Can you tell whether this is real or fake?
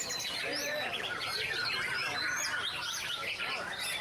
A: real